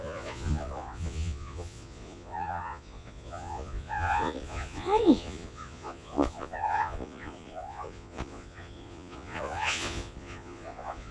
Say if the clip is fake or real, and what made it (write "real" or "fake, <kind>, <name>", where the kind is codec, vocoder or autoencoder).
fake, vocoder, Vocos